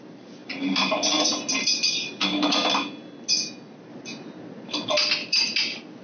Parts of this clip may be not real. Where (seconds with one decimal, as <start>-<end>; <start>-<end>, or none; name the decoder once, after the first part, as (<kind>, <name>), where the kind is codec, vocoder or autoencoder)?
none

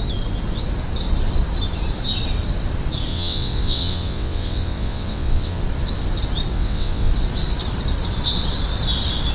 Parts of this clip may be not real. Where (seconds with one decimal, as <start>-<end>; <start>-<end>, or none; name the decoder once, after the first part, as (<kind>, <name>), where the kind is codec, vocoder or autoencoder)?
3.1-5.6 (vocoder, WaveNeXt); 6.5-7.1

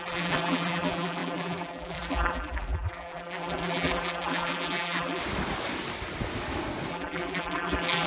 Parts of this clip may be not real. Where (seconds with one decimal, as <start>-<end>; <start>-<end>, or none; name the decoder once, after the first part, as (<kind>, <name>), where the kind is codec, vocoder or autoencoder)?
0.0-5.2 (vocoder, BigVGAN v2); 6.9-8.1

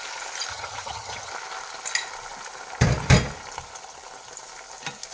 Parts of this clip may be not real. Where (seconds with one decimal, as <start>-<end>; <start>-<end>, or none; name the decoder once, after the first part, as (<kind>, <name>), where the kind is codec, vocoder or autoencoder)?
0.5-1.3 (vocoder, HiFi-GAN)